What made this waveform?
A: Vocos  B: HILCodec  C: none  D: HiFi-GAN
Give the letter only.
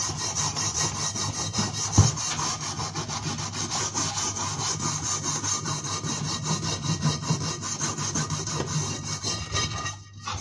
C